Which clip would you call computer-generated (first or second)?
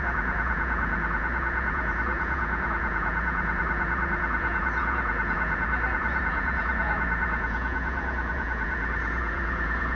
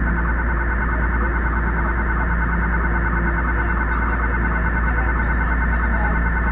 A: first